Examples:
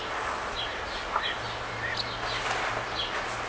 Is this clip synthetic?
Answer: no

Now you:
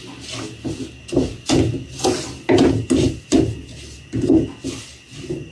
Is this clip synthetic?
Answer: no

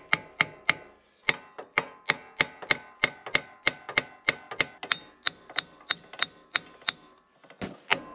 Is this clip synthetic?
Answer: no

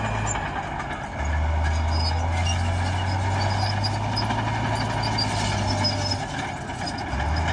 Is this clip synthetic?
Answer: no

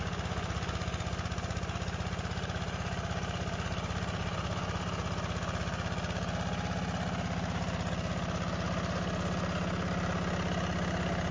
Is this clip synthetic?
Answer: no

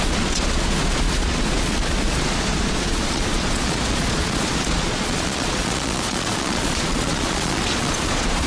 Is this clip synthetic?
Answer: yes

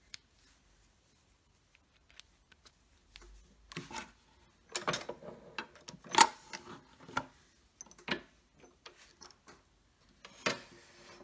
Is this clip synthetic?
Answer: no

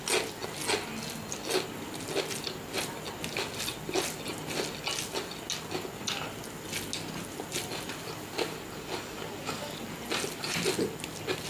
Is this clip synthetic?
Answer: no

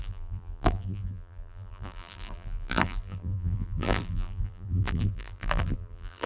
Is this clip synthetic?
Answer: yes